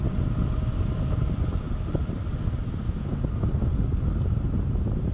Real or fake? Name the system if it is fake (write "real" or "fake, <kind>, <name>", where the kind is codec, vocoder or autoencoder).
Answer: real